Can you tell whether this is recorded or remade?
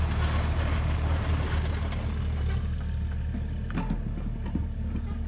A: recorded